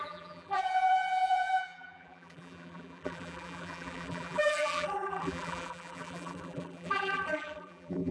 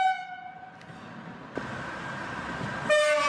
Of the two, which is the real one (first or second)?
second